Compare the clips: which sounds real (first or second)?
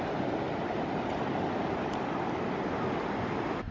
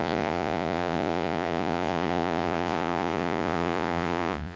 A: first